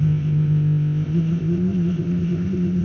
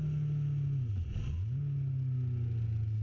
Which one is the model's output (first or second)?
first